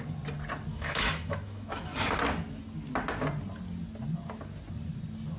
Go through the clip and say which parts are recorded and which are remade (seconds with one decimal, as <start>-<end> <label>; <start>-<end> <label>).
0.0-0.7 recorded; 0.7-1.9 remade; 1.9-5.4 recorded